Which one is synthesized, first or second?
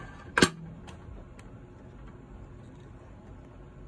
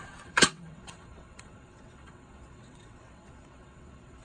second